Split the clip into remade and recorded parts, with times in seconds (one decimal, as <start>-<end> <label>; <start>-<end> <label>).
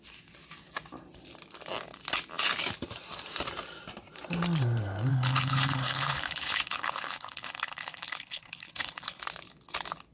0.0-5.1 recorded; 5.1-9.2 remade; 9.2-10.1 recorded